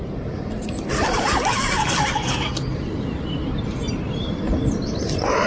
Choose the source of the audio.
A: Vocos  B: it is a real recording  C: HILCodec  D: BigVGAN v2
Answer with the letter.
D